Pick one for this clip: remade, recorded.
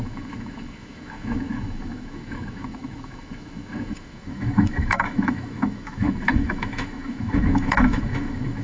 remade